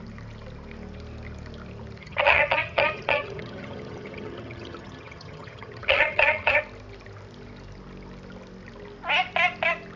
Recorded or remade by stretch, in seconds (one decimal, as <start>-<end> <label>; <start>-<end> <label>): 0.0-2.0 recorded; 2.0-6.6 remade; 6.6-10.0 recorded

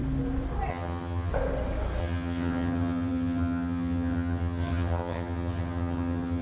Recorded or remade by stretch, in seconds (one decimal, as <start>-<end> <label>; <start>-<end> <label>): 0.0-0.7 recorded; 0.7-1.3 remade; 1.3-2.0 recorded; 2.0-6.4 remade

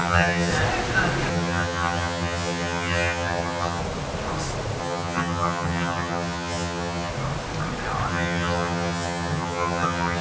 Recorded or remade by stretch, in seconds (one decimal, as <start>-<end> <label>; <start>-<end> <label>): 0.0-0.5 remade; 0.5-1.3 recorded; 1.3-3.8 remade; 3.8-4.8 recorded; 4.8-7.1 remade; 7.1-8.1 recorded; 8.1-10.2 remade

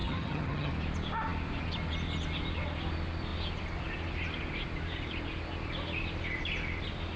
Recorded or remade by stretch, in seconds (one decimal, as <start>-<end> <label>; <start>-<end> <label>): 0.0-0.7 remade; 0.7-7.2 recorded

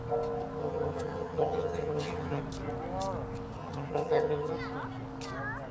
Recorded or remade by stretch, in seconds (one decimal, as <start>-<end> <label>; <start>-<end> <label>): 0.0-0.6 recorded; 0.6-2.4 remade; 2.4-3.6 recorded; 3.6-4.5 remade; 4.5-5.7 recorded

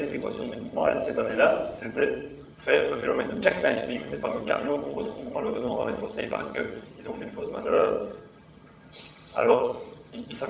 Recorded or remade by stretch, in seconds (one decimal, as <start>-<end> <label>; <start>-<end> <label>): 0.0-1.3 remade; 1.3-1.8 recorded; 1.8-10.5 remade